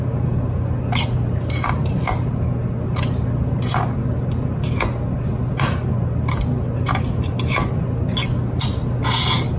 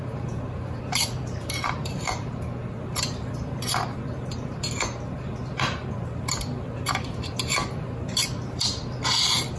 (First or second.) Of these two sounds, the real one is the first